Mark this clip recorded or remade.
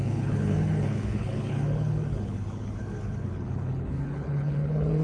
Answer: remade